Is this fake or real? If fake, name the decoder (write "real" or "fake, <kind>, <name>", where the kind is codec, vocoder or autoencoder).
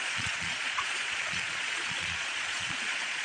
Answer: fake, vocoder, Vocos